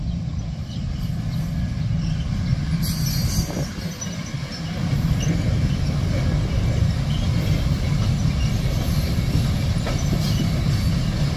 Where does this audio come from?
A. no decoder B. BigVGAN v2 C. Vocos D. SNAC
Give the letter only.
A